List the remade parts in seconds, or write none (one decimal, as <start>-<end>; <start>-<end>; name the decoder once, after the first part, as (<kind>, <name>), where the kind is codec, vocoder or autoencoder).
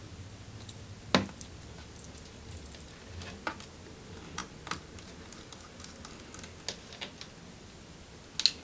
none